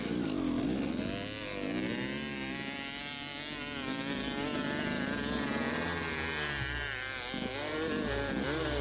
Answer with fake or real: real